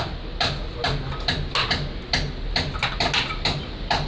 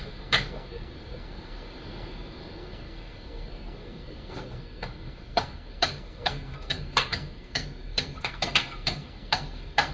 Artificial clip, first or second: second